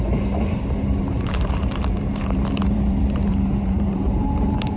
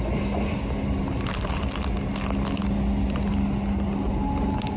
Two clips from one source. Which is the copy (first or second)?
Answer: first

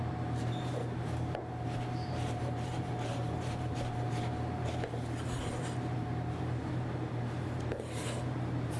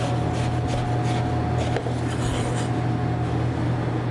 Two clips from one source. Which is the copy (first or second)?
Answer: first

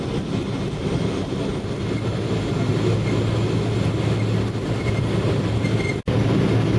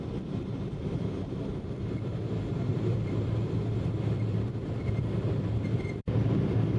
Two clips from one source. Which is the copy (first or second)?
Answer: second